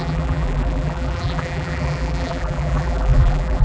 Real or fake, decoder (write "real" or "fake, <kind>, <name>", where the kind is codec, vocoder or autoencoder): fake, vocoder, BigVGAN v2